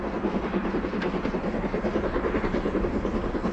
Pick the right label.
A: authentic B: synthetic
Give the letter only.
A